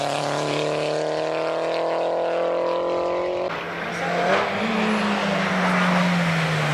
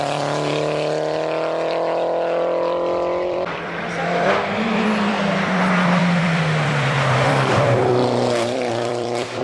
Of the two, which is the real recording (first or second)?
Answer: first